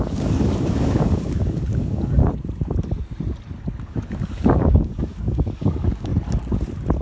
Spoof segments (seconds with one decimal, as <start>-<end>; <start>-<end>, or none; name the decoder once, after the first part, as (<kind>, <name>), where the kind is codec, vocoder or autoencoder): 0.0-2.2 (codec, DAC); 3.8-6.1